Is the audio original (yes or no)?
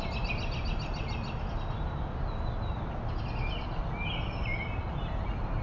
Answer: yes